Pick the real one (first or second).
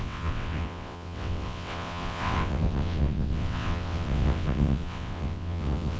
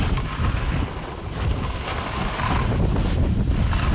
second